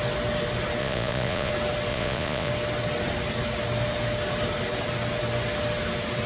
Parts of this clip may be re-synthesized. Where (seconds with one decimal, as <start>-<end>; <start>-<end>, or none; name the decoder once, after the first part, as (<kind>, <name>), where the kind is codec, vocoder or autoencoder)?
0.8-1.5 (vocoder, Vocos); 1.9-2.5